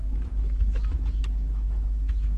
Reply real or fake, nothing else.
fake